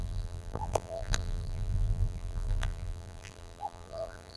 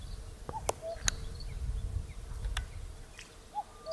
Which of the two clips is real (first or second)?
second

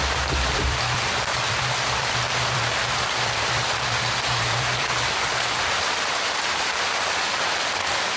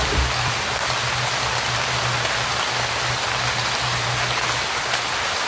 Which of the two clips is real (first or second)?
second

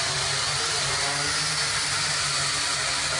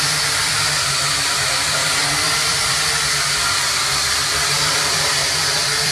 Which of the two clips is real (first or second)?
first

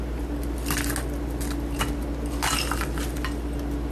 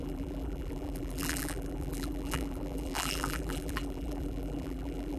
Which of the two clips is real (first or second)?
first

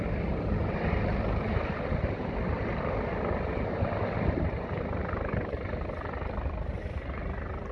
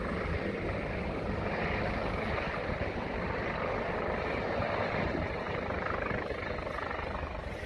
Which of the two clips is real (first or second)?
second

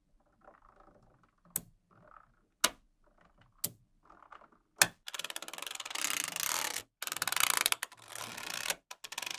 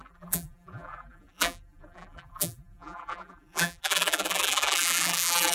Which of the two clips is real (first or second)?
first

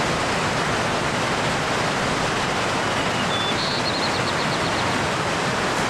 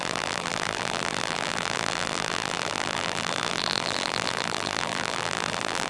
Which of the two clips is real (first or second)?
first